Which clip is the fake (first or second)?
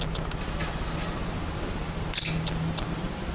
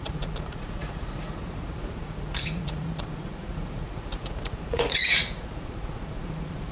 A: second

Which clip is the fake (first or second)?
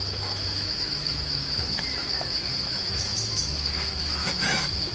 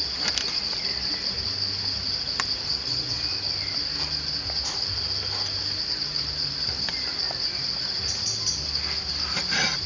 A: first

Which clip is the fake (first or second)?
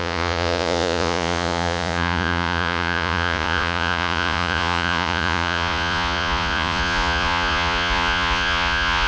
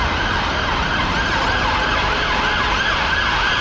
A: first